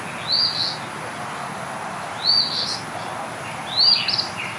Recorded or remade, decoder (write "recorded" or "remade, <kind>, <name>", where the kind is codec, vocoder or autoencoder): recorded